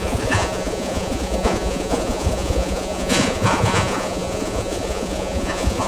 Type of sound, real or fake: fake